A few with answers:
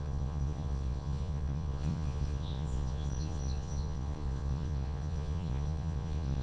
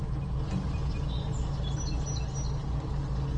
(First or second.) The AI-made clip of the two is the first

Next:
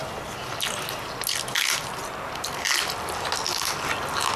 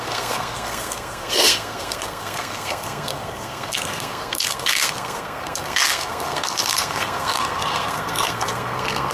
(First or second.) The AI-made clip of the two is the second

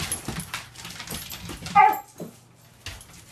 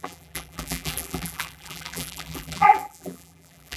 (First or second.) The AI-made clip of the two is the second